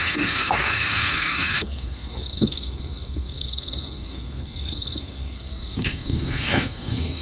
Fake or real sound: fake